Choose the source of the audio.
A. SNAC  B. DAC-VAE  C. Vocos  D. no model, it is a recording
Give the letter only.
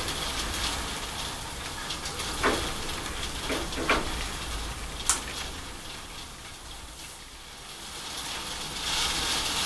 D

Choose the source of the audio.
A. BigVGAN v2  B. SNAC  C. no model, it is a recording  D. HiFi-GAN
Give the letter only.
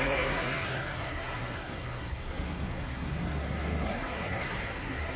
B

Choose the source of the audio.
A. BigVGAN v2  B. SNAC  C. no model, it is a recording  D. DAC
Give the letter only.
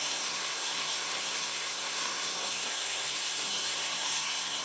B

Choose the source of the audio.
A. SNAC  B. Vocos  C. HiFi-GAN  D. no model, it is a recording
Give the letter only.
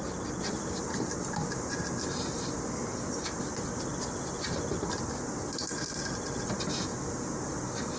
D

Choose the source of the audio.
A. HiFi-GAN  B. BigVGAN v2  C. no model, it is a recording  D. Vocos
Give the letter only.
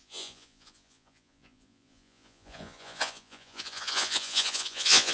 D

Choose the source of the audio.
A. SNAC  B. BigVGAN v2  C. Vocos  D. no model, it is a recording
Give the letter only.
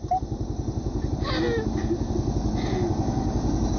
D